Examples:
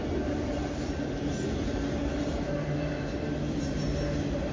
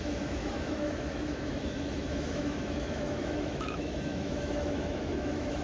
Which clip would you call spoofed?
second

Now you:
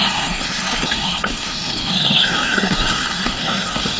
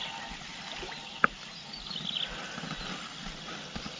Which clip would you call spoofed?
first